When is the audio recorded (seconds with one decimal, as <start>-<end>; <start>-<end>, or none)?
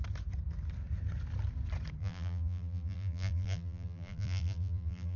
0.0-2.0